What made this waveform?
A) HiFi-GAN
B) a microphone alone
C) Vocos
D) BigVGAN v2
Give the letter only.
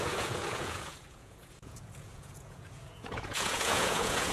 C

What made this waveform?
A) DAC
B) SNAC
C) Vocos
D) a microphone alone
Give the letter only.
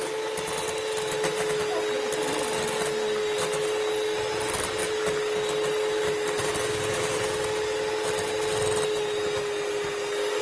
D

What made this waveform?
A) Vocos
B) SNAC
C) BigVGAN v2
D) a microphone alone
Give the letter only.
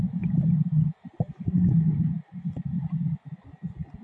D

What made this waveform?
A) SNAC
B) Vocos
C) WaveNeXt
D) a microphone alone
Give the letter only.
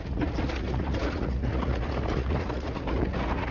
B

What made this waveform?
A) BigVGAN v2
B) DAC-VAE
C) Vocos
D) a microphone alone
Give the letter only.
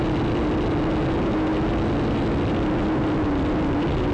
D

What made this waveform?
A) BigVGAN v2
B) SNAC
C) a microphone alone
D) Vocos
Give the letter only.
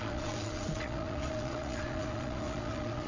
D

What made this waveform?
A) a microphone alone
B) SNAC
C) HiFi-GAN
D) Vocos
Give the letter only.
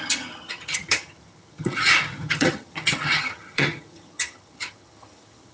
C